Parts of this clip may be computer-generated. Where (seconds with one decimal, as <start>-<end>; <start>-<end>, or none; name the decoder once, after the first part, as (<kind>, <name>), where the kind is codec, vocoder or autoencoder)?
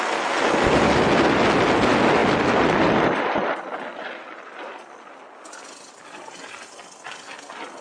none